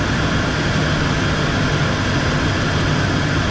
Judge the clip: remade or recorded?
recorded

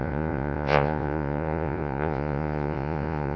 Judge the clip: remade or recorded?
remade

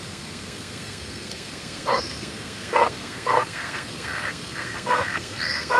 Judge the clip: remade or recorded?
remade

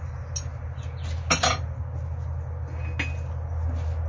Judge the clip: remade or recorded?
recorded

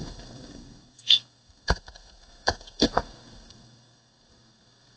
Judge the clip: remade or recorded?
remade